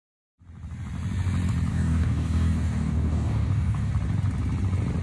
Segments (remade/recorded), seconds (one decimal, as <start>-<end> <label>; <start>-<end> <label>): 0.0-1.7 recorded; 1.7-3.9 remade; 3.9-5.0 recorded